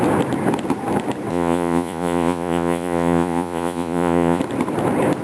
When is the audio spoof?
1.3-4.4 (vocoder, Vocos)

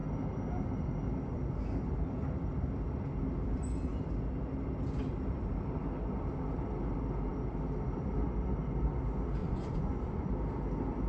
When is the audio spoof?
9.4-10.3 (vocoder, Vocos)

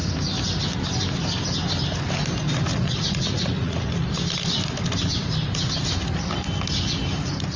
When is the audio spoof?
2.7-3.9 (vocoder, Vocos)

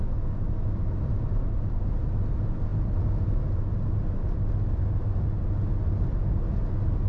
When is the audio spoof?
none

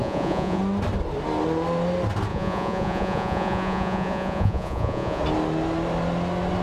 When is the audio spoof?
0.0-0.6 (vocoder, Vocos); 2.3-5.2

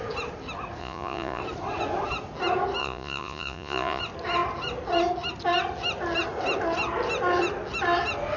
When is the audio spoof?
0.8-1.4 (vocoder, Vocos); 2.8-4.0

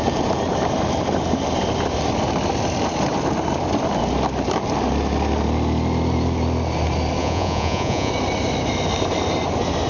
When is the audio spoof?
7.2-8.1 (vocoder, Vocos)

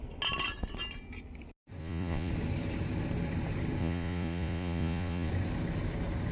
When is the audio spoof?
1.8-2.3 (vocoder, Vocos); 3.8-5.3